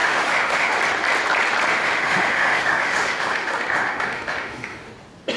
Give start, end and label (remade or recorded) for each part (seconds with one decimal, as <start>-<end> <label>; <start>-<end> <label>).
0.0-0.8 remade; 0.8-1.7 recorded; 1.7-4.9 remade; 4.9-5.4 recorded

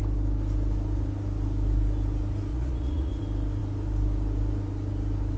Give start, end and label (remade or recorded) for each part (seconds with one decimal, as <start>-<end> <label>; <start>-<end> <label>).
0.0-2.5 recorded; 2.5-3.2 remade; 3.2-5.4 recorded

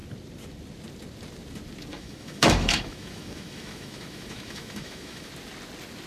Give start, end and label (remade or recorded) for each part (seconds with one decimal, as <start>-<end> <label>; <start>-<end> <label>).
0.0-1.9 recorded; 1.9-5.3 remade; 5.3-6.1 recorded